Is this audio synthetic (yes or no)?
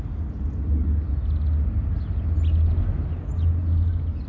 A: no